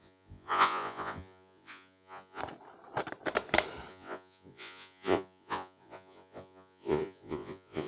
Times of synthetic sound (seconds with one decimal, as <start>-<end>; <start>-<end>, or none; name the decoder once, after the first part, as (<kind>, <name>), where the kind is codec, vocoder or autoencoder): 0.0-2.4 (vocoder, Vocos); 3.9-7.9